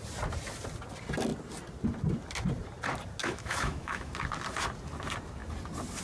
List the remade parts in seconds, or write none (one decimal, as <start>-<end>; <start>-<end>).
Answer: 3.2-4.1

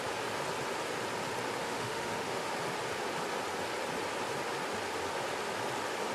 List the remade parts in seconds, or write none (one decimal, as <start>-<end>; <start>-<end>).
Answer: 1.6-2.5

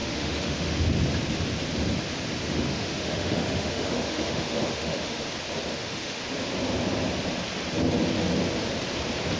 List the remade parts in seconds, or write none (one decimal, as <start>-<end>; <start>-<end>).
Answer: 0.0-0.8; 2.4-5.2; 5.7-6.2

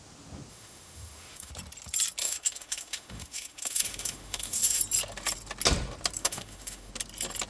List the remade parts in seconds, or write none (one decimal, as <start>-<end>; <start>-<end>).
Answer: 0.5-1.5; 2.2-4.8; 6.2-6.9